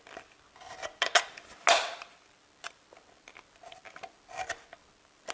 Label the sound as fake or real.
real